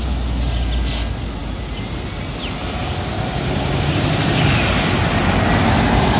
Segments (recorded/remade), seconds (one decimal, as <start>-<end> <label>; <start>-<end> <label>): 0.0-6.2 recorded